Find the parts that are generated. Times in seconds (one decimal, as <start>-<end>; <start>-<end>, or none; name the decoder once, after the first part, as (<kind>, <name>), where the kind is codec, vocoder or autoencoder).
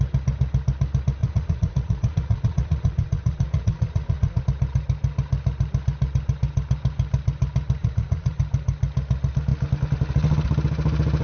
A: 1.2-4.4 (vocoder, Vocos); 7.8-8.4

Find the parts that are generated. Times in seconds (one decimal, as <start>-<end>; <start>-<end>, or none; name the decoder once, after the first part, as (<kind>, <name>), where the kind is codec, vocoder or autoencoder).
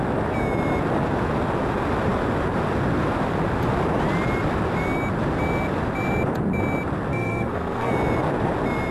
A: 7.1-7.9 (codec, SNAC)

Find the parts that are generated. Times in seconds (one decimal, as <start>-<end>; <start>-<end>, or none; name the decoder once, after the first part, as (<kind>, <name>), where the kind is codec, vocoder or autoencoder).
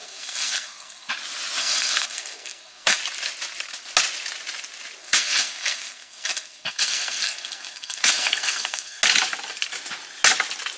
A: 0.0-1.1 (codec, SNAC); 1.6-3.0; 5.0-9.0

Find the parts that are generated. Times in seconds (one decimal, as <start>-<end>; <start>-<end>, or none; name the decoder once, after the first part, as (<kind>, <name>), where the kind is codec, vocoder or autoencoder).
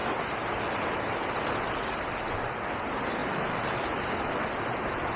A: none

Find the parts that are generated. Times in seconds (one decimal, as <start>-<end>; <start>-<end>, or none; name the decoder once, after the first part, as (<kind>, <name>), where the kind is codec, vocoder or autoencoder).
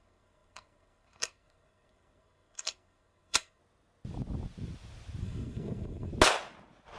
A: 0.0-3.6 (codec, SNAC); 5.2-6.1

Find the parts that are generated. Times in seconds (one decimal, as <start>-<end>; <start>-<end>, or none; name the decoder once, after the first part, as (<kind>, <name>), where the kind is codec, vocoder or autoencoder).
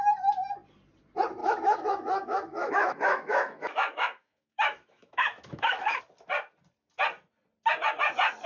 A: 1.4-6.0 (autoencoder, DAC-VAE)